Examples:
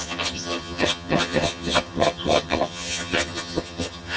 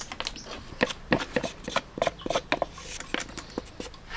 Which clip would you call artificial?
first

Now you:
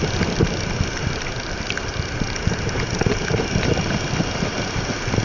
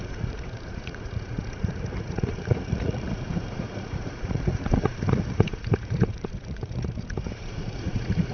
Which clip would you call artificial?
second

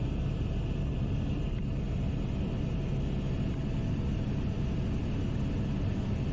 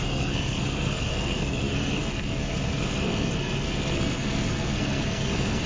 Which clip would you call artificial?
second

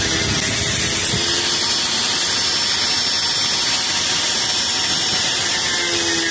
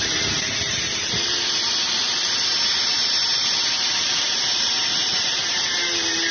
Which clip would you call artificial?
second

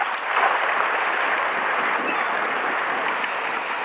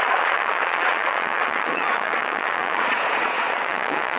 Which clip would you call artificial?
second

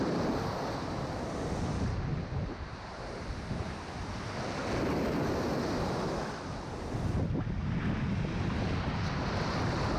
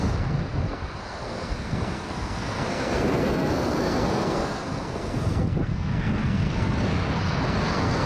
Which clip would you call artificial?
second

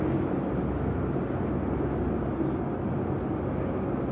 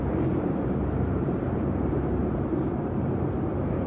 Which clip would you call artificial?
second